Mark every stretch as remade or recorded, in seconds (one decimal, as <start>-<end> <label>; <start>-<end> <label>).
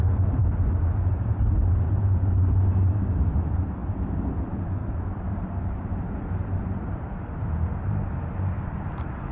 0.0-3.8 recorded; 3.8-8.8 remade; 8.8-9.3 recorded